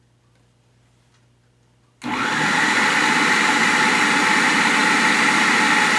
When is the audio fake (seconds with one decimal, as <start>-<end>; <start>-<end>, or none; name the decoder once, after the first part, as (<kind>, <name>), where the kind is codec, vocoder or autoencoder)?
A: none